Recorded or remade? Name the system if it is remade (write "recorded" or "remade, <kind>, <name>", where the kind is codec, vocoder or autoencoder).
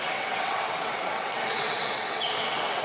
remade, vocoder, WaveNeXt